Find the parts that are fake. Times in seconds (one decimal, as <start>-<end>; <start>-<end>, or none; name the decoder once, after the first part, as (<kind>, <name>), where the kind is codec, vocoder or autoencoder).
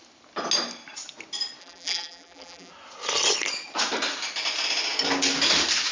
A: 1.6-2.7 (vocoder, BigVGAN v2)